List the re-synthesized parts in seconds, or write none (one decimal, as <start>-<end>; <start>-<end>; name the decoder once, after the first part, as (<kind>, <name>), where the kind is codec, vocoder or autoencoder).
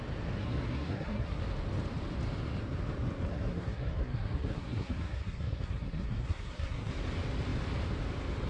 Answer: 0.4-1.4 (codec, SNAC); 3.3-6.9